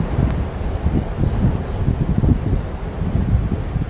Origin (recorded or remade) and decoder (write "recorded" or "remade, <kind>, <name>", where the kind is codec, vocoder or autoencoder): recorded